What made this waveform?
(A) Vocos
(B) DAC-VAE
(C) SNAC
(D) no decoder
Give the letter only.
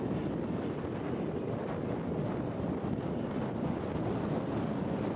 D